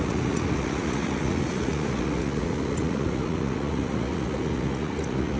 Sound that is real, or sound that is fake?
fake